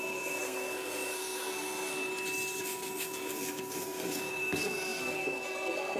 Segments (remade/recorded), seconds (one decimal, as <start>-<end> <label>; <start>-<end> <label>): 0.0-2.1 remade; 2.1-2.6 recorded; 2.6-6.0 remade